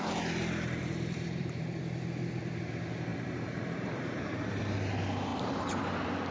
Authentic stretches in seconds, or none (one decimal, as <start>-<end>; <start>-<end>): 0.0-0.8; 1.8-3.1; 4.6-5.3; 5.8-6.3